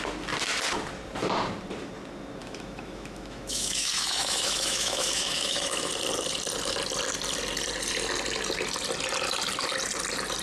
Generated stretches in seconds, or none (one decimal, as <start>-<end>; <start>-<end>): 2.4-5.9